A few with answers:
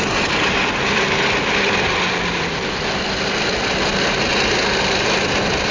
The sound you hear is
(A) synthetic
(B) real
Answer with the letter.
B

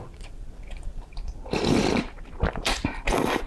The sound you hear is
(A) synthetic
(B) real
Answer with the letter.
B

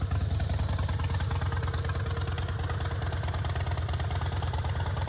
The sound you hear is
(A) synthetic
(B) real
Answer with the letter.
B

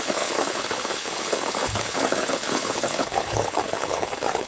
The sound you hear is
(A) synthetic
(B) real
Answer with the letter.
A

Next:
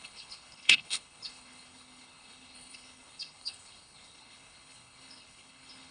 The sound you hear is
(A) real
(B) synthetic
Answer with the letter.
B